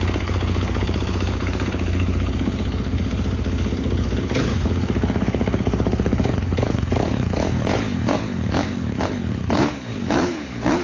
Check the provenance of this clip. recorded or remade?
remade